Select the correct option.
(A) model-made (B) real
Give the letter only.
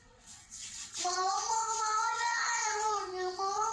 A